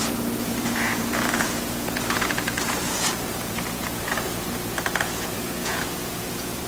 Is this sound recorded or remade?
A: remade